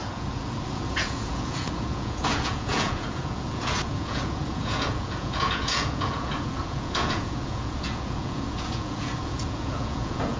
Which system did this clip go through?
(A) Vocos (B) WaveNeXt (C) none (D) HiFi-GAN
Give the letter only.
A